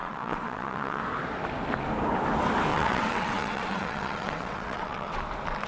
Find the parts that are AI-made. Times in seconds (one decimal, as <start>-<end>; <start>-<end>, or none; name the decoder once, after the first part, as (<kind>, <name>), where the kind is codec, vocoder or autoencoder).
0.0-1.0 (vocoder, WaveNeXt); 2.7-5.2